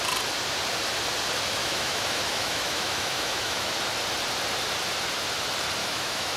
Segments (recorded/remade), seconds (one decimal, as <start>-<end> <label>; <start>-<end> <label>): 0.0-1.6 recorded; 1.6-3.7 remade; 3.7-5.8 recorded; 5.8-6.4 remade